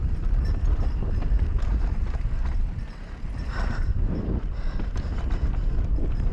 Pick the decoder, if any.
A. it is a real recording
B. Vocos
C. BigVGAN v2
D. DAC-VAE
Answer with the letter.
C